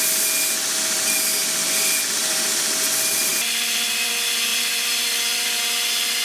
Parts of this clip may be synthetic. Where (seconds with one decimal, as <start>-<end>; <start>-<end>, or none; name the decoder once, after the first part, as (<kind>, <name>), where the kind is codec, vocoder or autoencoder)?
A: 3.3-4.1 (vocoder, BigVGAN v2); 4.5-5.6